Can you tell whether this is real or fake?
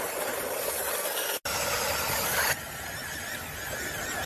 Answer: real